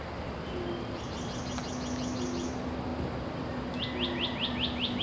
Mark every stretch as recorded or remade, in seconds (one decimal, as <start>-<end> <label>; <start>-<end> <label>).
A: 0.0-5.0 recorded